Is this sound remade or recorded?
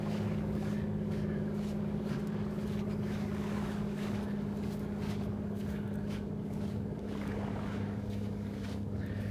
remade